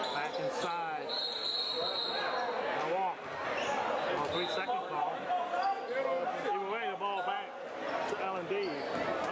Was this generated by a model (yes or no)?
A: no